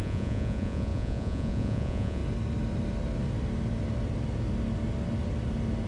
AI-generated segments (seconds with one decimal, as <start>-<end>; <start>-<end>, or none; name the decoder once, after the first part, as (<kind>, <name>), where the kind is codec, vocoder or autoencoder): 0.0-2.2 (vocoder, Vocos)